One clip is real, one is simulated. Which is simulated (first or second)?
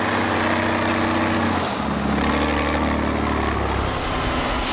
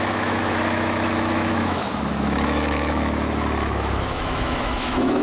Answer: second